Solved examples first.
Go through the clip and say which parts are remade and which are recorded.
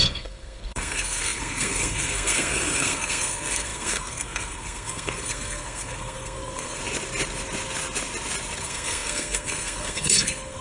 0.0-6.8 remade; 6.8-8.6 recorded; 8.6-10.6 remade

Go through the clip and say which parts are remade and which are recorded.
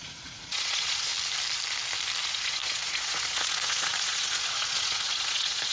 0.0-1.1 remade; 1.1-2.2 recorded; 2.2-5.7 remade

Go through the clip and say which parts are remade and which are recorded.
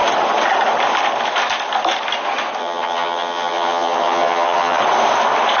0.0-2.6 recorded; 2.6-4.8 remade; 4.8-5.6 recorded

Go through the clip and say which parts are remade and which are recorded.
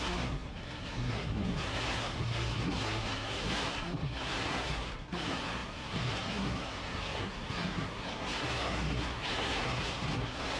0.0-10.6 remade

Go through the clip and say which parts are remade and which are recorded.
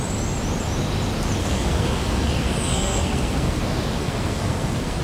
0.0-1.4 recorded; 1.4-3.6 remade; 3.6-4.0 recorded; 4.0-5.0 remade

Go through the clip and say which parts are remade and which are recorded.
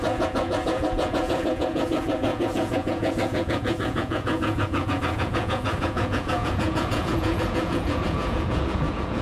0.0-9.2 remade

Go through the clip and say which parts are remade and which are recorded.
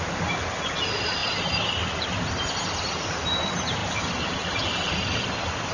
0.0-5.7 recorded